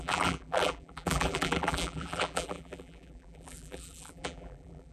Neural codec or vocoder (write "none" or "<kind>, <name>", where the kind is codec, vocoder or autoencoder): vocoder, BigVGAN v2